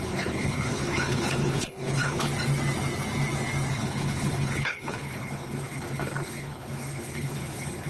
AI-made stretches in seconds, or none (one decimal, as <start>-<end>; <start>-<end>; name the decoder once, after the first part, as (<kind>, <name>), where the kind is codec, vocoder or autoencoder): 0.0-2.3 (codec, HILCodec); 3.7-7.9